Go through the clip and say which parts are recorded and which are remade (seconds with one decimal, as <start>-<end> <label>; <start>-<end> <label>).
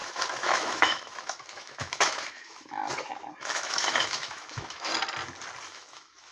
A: 0.0-2.8 remade; 2.8-3.4 recorded; 3.4-4.9 remade; 4.9-5.7 recorded; 5.7-6.3 remade